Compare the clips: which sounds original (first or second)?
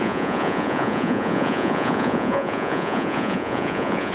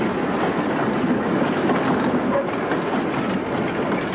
second